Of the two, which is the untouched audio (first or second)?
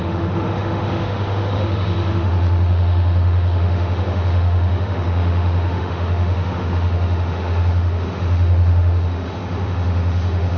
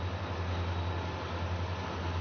second